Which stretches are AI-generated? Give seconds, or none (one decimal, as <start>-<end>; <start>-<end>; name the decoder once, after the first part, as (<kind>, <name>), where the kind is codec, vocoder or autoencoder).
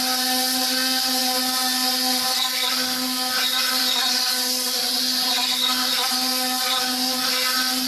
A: none